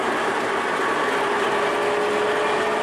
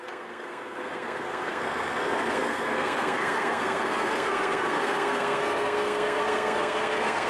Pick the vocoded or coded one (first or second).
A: second